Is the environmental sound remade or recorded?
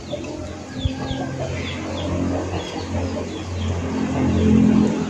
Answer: recorded